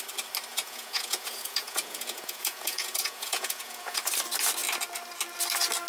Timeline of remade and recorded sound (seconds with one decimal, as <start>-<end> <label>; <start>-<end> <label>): 0.0-0.5 recorded; 0.5-4.0 remade; 4.0-5.9 recorded